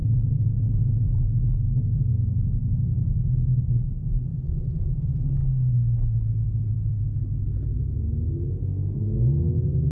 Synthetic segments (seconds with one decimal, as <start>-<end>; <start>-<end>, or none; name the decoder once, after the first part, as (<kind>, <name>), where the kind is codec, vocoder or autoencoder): 0.0-0.6 (codec, DAC); 2.1-3.9; 5.4-6.4